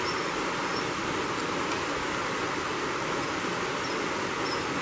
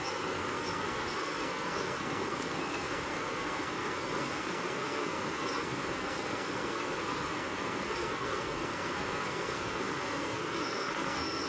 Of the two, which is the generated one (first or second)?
second